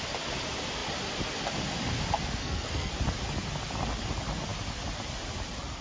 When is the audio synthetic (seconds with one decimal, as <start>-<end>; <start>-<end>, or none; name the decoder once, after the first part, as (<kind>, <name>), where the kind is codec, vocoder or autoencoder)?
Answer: 2.4-2.9 (codec, SNAC)